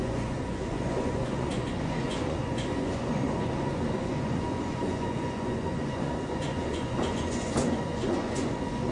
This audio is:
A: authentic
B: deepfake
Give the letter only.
B